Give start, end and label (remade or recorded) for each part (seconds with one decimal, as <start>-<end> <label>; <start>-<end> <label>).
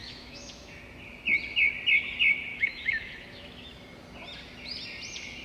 0.0-0.8 remade; 0.8-2.5 recorded; 2.5-3.7 remade; 3.7-5.4 recorded